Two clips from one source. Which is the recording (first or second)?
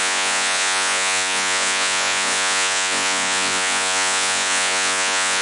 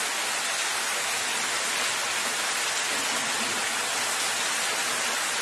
second